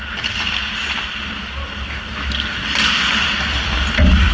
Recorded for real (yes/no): yes